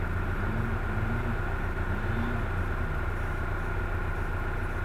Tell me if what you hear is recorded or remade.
recorded